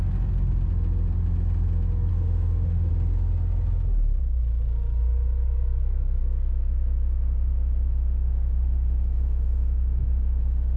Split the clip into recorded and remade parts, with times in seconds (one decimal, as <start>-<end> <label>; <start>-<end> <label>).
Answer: 0.0-2.1 recorded; 2.1-2.9 remade; 2.9-6.2 recorded; 6.2-10.8 remade